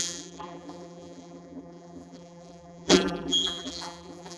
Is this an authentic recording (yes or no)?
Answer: no